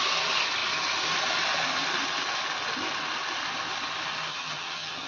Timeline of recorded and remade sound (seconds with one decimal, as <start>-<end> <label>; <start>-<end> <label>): 0.0-4.3 recorded; 4.3-5.1 remade